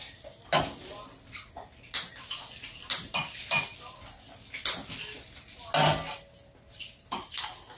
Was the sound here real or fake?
real